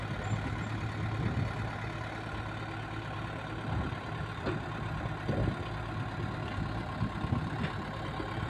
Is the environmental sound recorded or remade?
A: recorded